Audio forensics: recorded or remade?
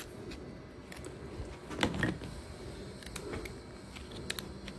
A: recorded